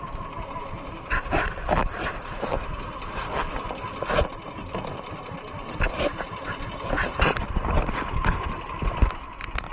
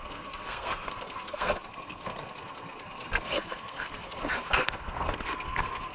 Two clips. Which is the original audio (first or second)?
first